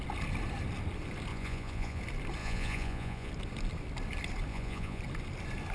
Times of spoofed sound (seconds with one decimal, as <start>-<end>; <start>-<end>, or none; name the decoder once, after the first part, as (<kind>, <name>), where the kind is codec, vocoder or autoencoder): 1.3-2.0 (vocoder, Vocos); 2.4-3.3; 4.5-5.0